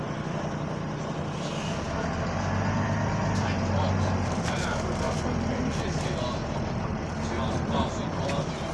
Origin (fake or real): real